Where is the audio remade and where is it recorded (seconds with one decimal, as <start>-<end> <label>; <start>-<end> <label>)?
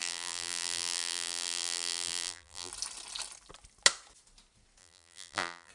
0.0-2.7 remade; 2.7-4.8 recorded; 4.8-5.7 remade